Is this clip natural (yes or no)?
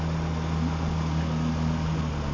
yes